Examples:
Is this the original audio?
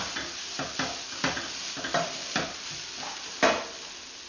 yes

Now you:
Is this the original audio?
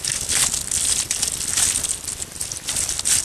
yes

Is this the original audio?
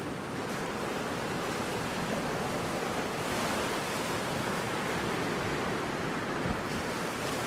yes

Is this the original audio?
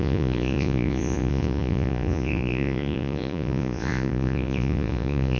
no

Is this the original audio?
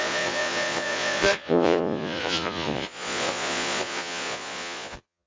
no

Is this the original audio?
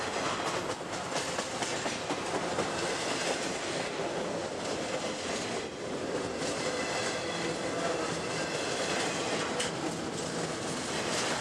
yes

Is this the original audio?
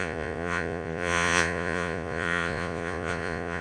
no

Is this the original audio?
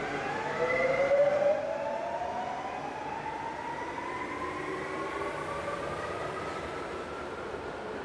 yes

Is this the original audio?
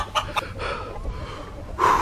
yes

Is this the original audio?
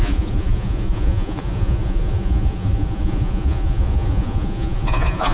no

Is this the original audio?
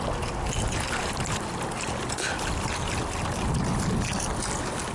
yes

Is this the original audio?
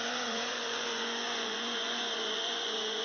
no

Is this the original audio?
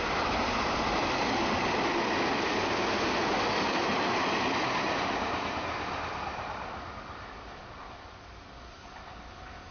yes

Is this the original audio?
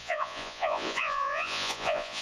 no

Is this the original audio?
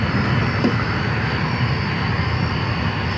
yes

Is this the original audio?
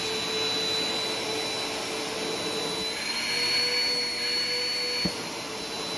yes